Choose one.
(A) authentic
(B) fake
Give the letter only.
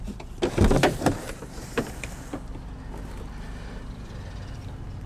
A